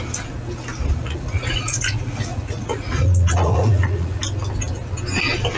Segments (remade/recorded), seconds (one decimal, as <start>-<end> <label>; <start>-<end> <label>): 0.0-1.0 recorded; 1.0-4.2 remade; 4.2-5.6 recorded